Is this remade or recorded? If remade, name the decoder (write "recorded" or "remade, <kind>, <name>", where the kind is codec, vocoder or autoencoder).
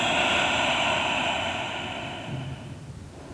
recorded